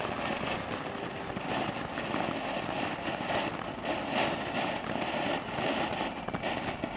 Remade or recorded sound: recorded